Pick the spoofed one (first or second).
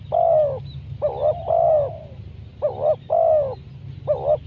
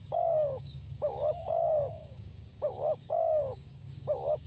second